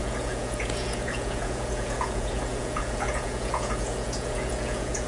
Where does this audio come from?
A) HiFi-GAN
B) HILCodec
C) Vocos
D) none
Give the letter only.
C